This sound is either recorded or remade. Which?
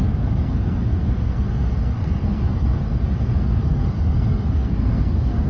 remade